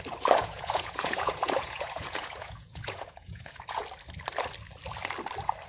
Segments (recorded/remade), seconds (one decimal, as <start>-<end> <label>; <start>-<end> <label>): 0.0-0.4 recorded; 0.4-3.8 remade; 3.8-5.7 recorded